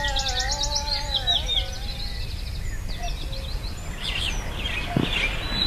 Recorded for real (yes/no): yes